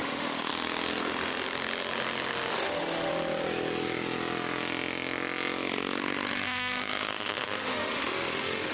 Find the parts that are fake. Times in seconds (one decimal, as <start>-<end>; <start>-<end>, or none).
0.0-0.5; 2.5-3.1; 5.7-8.7

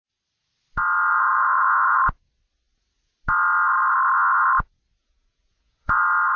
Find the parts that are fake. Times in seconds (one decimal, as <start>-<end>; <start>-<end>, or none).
1.1-2.0; 5.0-6.0

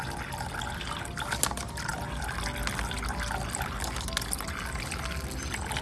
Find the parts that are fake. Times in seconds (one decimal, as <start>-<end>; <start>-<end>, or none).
none

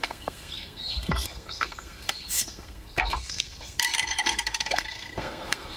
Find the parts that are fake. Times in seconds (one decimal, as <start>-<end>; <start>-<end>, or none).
0.0-5.8

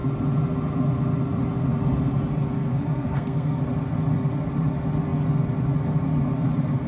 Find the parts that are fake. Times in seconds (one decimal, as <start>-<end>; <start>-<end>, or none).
2.7-3.6

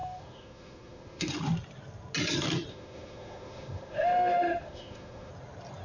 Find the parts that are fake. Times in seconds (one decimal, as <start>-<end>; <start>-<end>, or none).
0.0-1.3; 2.7-5.3

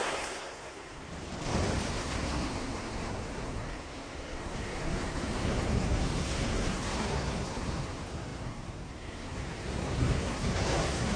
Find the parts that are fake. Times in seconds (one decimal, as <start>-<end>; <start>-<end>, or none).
0.0-1.0; 1.9-11.2

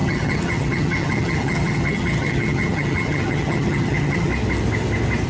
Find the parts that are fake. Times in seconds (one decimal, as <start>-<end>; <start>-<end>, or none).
0.0-4.3